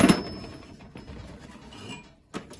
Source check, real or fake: real